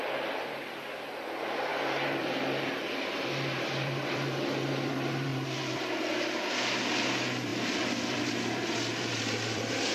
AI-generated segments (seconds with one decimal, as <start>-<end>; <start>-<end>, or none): 0.0-9.9